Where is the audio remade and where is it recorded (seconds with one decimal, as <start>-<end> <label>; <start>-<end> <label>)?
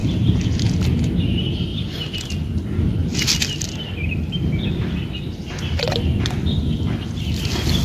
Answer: 0.0-7.8 recorded